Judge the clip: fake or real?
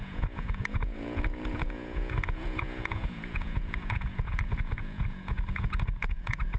fake